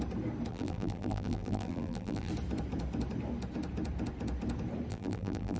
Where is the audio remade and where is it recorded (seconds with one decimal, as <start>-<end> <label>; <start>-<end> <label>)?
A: 0.0-0.5 recorded; 0.5-2.3 remade; 2.3-4.9 recorded; 4.9-5.6 remade